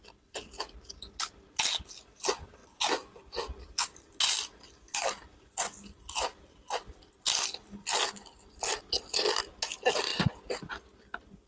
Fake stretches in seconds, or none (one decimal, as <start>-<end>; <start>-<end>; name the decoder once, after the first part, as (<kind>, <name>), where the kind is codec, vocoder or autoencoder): none